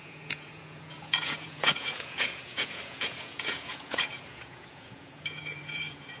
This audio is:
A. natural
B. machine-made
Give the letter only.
B